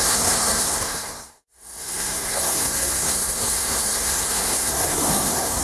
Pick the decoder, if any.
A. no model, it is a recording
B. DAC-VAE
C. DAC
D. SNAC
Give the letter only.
D